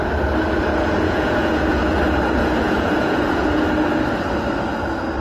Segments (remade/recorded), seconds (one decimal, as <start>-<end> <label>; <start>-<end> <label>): 0.0-0.7 recorded; 0.7-2.0 remade; 2.0-2.4 recorded; 2.4-3.6 remade; 3.6-5.2 recorded